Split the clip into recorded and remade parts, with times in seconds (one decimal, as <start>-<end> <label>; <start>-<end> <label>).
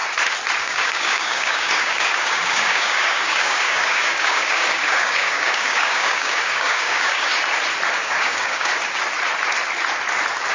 0.0-0.6 recorded; 0.6-7.3 remade; 7.3-7.9 recorded; 7.9-8.7 remade; 8.7-10.5 recorded